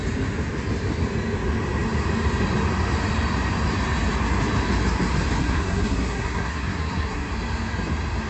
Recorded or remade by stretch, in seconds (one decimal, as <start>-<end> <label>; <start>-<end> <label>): 0.0-5.4 recorded; 5.4-7.3 remade; 7.3-8.3 recorded